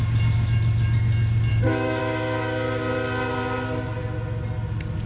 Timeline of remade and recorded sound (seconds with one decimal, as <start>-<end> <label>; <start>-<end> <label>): 0.0-1.5 recorded; 1.5-2.0 remade; 2.0-5.1 recorded